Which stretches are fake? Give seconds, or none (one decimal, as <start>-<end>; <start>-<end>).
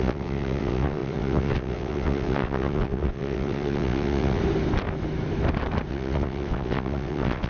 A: 0.0-4.4; 5.9-7.5